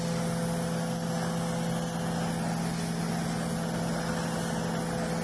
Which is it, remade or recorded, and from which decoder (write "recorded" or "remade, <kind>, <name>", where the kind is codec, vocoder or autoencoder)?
recorded